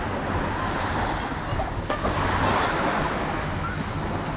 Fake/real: real